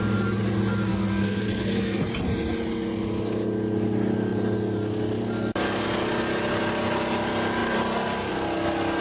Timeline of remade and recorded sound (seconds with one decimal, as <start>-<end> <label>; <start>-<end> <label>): 0.0-0.9 recorded; 0.9-2.0 remade; 2.0-9.0 recorded